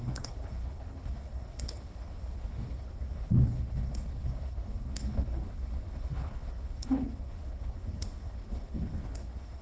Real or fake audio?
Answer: fake